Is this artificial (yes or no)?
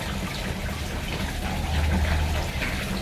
no